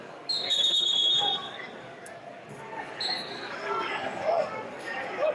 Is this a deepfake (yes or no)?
yes